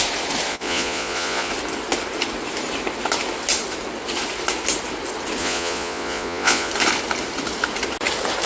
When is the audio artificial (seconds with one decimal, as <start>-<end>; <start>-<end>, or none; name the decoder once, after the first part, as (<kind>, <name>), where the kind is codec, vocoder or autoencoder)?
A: 0.5-1.5 (vocoder, Vocos); 5.4-6.7